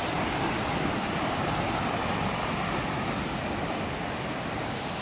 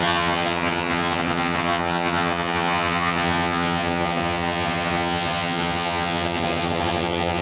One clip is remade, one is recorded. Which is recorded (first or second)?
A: first